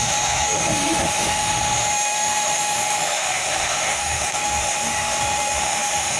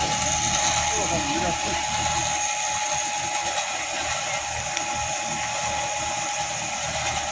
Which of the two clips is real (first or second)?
second